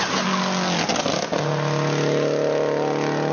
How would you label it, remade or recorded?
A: recorded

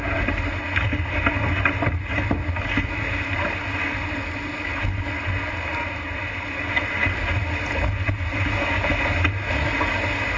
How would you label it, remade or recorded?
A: recorded